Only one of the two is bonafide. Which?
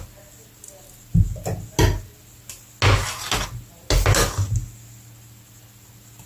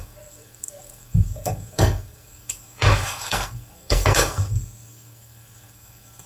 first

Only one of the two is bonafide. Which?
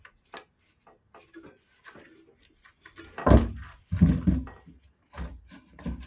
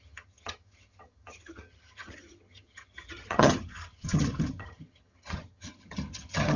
first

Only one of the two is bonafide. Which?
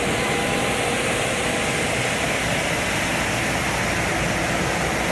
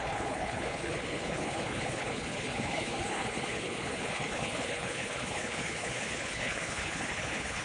first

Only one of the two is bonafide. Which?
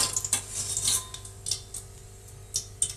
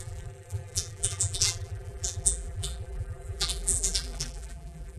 first